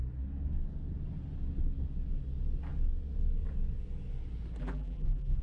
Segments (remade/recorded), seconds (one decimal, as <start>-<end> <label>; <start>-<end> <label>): 0.0-4.6 recorded; 4.6-5.4 remade